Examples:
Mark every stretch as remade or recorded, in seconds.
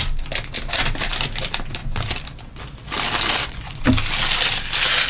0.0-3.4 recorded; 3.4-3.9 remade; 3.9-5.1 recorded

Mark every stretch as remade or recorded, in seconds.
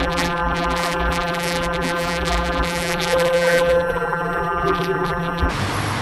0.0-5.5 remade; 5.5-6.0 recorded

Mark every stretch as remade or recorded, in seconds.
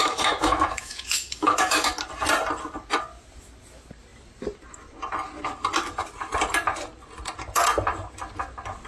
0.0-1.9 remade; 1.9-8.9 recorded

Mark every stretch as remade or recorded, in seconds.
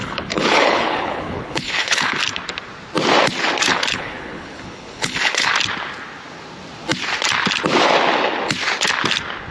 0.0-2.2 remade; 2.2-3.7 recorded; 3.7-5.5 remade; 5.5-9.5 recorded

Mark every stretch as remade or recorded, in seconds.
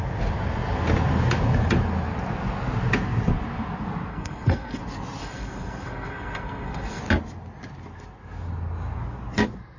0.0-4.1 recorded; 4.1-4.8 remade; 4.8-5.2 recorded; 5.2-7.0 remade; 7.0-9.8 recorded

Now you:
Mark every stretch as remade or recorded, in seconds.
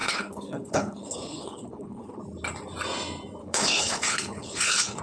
0.0-2.2 remade; 2.2-3.4 recorded; 3.4-5.0 remade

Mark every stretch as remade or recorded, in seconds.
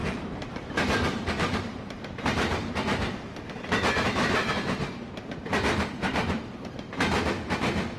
0.0-3.2 remade; 3.2-4.4 recorded; 4.4-6.4 remade; 6.4-8.0 recorded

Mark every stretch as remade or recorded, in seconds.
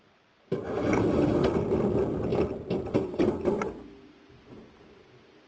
0.0-5.5 recorded